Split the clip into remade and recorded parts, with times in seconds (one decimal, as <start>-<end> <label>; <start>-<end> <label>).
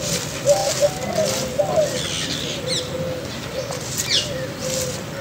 0.0-5.2 recorded